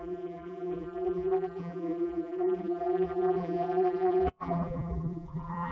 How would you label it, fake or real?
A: fake